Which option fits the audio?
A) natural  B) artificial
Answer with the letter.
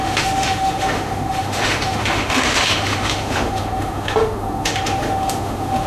B